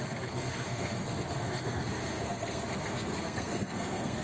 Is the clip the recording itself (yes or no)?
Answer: no